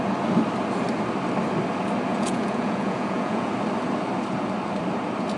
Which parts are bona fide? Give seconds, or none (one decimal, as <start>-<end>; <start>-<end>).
0.0-2.1; 3.5-5.4